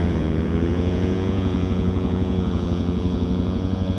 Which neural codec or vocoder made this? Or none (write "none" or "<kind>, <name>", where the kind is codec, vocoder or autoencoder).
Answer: vocoder, Vocos